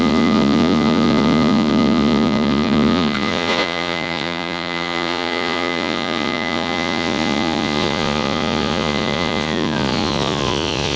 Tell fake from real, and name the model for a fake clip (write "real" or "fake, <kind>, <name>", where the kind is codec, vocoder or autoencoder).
fake, vocoder, Vocos